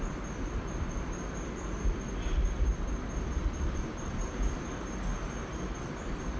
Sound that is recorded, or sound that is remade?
remade